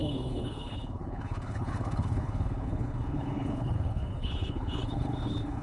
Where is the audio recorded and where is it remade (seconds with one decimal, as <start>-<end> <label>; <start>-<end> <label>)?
0.0-5.6 remade

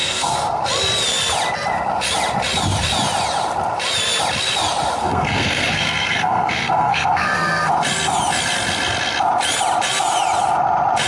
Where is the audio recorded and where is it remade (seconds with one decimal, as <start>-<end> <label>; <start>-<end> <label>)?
0.0-0.6 remade; 0.6-5.0 recorded; 5.0-7.7 remade; 7.7-11.1 recorded